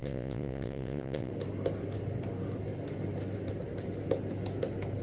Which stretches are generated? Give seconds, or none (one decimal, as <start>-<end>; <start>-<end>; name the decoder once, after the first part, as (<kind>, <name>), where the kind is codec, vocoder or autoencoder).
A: 0.0-1.3 (vocoder, Vocos)